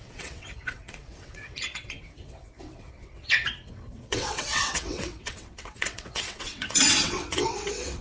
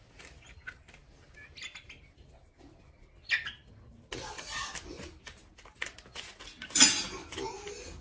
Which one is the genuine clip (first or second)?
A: second